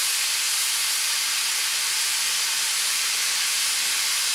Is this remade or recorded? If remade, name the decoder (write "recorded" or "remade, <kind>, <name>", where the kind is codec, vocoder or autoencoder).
recorded